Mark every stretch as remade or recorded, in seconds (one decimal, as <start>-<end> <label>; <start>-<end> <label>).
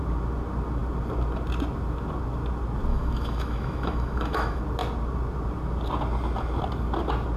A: 0.0-2.9 recorded; 2.9-4.6 remade; 4.6-7.4 recorded